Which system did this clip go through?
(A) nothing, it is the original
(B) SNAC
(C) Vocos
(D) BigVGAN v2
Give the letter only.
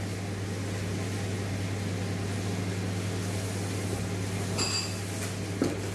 A